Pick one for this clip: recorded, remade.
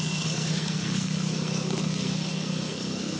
remade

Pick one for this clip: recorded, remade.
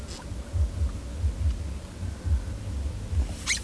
recorded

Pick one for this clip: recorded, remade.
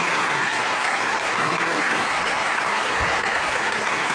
remade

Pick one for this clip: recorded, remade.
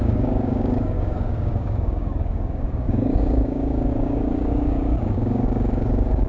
remade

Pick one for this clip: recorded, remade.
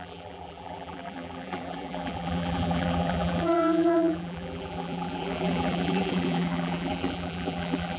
remade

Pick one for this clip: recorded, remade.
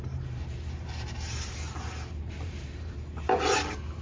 remade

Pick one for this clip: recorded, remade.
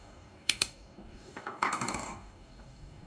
remade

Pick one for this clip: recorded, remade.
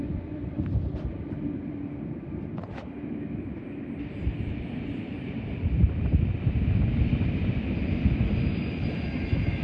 remade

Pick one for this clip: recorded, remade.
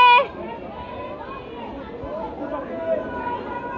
recorded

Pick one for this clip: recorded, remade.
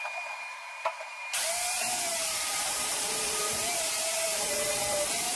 remade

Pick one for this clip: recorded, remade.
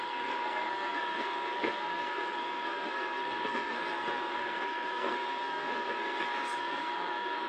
remade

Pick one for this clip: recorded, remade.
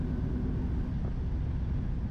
recorded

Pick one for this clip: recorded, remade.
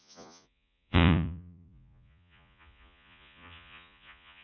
remade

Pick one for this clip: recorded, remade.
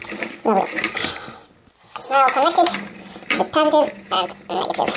recorded